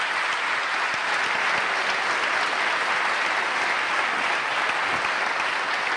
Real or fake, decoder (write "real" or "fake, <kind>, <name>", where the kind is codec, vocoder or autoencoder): real